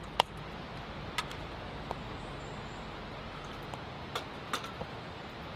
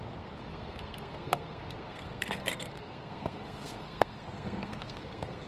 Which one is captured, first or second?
first